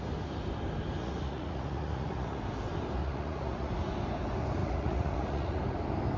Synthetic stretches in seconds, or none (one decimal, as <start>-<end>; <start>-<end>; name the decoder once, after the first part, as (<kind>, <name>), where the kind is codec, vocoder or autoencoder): 1.0-2.4 (vocoder, Vocos); 3.0-3.7; 4.6-5.6

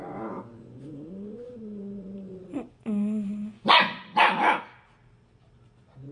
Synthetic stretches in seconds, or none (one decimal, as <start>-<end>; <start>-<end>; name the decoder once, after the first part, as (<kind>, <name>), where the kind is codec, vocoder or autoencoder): 0.5-4.2 (vocoder, Vocos)

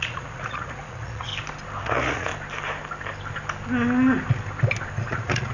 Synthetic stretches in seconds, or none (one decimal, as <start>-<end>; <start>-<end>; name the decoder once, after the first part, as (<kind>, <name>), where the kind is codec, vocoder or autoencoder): 0.0-1.3 (vocoder, Vocos); 1.8-2.3; 5.1-5.5